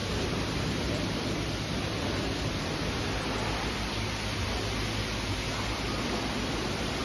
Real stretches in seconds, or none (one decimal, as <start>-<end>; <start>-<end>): 3.0-7.0